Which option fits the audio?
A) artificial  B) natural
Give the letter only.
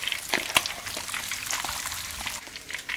B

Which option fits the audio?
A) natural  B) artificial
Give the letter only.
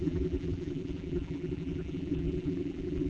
B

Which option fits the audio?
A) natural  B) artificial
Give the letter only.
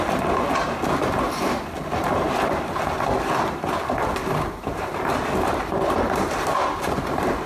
A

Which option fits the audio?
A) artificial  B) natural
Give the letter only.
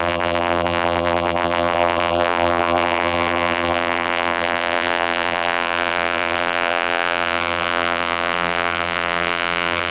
A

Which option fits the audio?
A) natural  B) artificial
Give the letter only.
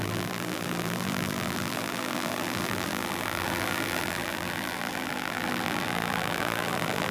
B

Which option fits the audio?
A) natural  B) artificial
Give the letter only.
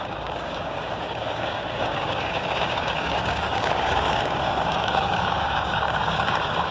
B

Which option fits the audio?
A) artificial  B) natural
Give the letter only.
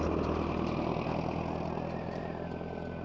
B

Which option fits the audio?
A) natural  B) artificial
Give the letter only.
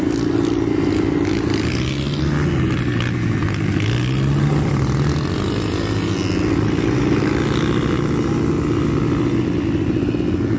A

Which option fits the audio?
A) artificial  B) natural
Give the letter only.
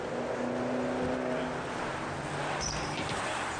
B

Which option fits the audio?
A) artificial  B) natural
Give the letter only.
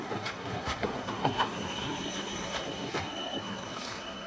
A